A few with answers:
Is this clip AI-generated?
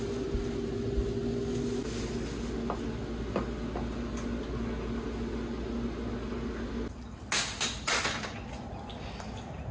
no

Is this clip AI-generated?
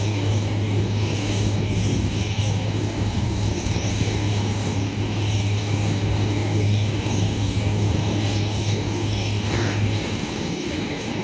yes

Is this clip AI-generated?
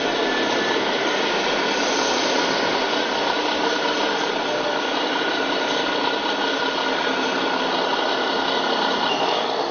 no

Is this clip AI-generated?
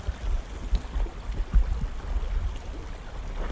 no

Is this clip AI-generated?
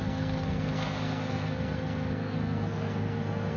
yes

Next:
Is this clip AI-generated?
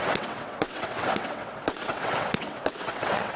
yes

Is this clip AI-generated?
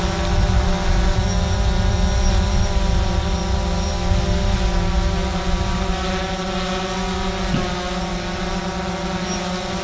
no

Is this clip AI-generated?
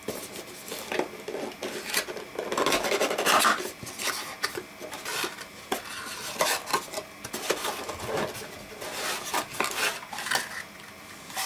no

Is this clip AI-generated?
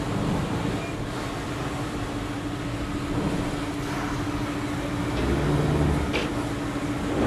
no